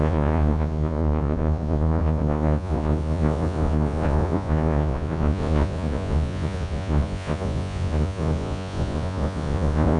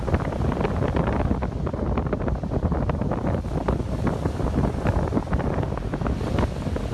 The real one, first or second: second